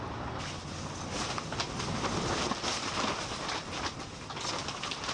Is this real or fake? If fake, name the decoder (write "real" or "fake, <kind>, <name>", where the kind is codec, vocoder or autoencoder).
real